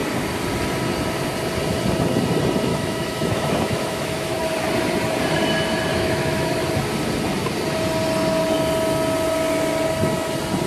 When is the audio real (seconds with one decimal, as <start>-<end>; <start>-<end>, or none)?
0.0-2.7; 4.4-5.9; 6.6-10.7